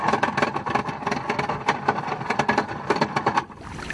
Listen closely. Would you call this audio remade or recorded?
remade